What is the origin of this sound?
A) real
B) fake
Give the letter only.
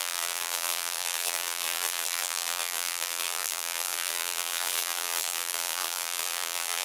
B